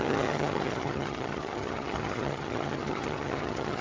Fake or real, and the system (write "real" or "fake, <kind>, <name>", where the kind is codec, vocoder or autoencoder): fake, vocoder, HiFi-GAN